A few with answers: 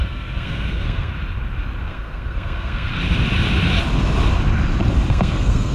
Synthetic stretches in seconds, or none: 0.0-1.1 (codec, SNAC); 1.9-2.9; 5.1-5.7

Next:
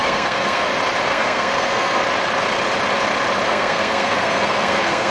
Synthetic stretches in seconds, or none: 0.0-0.7 (codec, SNAC); 1.1-2.0; 3.5-5.1

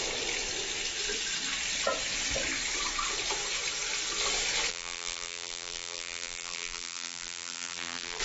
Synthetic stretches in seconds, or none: 4.7-8.2 (vocoder, BigVGAN v2)

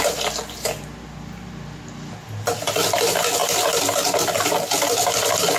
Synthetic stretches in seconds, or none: none

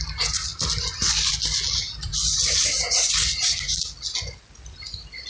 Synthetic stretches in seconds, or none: none

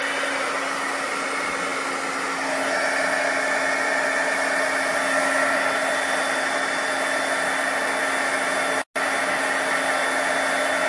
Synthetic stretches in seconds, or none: none

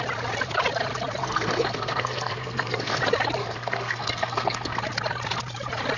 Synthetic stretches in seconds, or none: 1.2-3.0 (codec, SNAC); 3.4-4.8

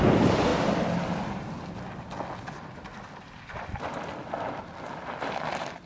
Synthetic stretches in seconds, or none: none